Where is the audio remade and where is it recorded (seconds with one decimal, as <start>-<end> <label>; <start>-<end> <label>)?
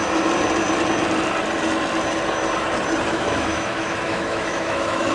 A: 0.0-3.1 recorded; 3.1-5.1 remade